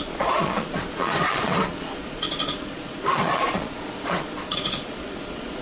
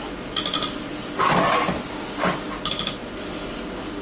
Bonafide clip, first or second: second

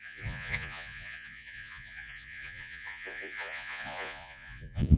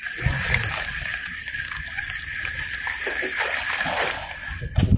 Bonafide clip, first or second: second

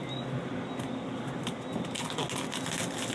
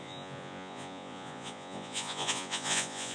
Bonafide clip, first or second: first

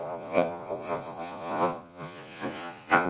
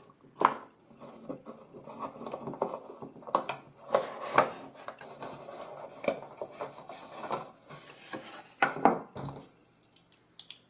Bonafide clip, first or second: second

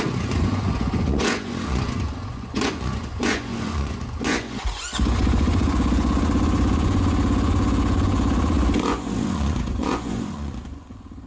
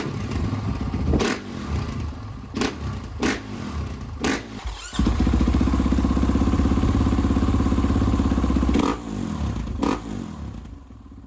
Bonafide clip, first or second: second